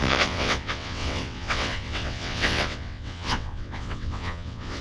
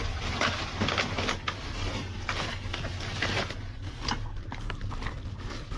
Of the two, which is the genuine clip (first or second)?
second